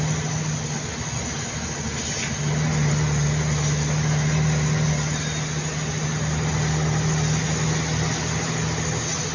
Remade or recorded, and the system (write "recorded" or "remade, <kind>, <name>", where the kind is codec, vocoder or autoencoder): recorded